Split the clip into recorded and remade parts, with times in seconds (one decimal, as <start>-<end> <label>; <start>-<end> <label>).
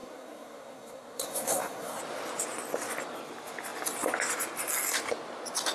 0.0-2.0 remade; 2.0-5.7 recorded